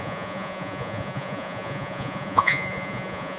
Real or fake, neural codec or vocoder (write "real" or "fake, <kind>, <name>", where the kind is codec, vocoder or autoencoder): fake, vocoder, Vocos